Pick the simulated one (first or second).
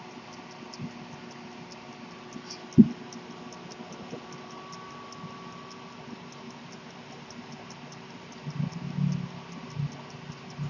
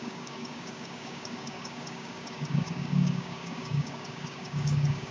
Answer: second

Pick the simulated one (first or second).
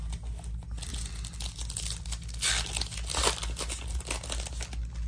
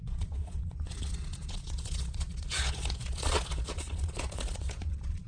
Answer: second